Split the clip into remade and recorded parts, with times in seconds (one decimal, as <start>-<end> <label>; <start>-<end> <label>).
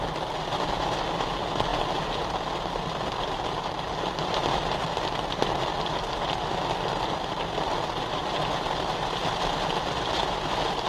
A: 0.0-10.9 recorded